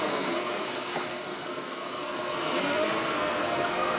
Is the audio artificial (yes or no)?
yes